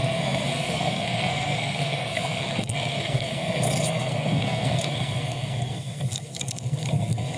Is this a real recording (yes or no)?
no